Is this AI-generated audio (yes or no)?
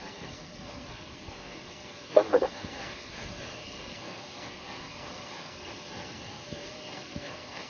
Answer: yes